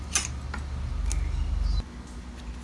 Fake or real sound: real